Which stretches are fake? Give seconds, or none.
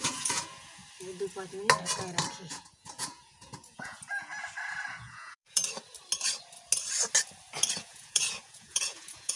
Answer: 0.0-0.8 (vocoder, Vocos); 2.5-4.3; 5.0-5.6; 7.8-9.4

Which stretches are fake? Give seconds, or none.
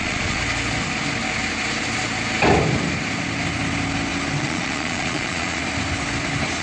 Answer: 0.0-0.4 (vocoder, Vocos); 4.4-5.6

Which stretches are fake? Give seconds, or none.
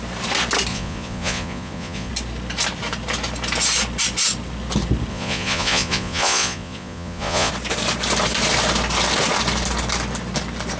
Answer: 0.7-2.1 (vocoder, Vocos); 5.1-7.5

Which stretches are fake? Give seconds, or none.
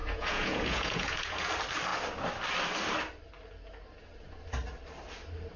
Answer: 0.0-1.5 (vocoder, Vocos)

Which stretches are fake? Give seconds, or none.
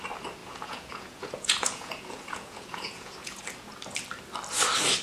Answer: 0.4-3.4 (vocoder, Vocos)